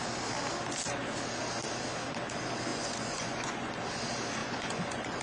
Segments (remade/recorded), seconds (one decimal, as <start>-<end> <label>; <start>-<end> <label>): 0.0-2.7 recorded; 2.7-3.7 remade; 3.7-4.4 recorded; 4.4-5.2 remade